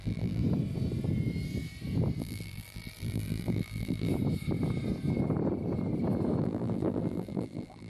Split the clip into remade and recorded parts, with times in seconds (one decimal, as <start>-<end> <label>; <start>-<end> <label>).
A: 0.0-0.4 remade; 0.4-2.2 recorded; 2.2-4.1 remade; 4.1-6.4 recorded; 6.4-7.9 remade